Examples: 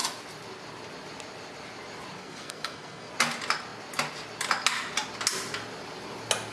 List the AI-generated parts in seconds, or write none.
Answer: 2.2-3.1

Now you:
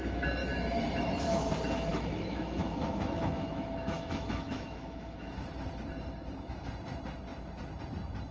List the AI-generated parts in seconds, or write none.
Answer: 0.4-1.5; 1.9-5.5

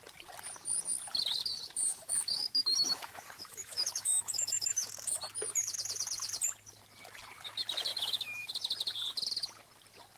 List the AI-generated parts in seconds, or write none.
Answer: 1.9-5.2; 7.9-8.5

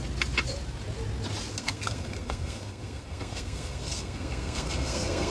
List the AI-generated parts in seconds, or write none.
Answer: 1.5-5.3

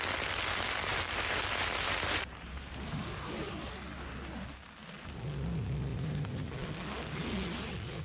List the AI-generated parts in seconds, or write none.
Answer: 0.9-3.7; 5.9-6.5

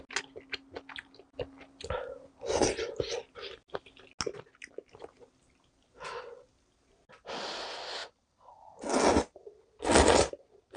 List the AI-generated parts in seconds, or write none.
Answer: none